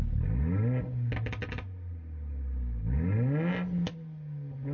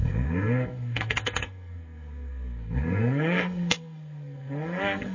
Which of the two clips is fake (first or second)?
second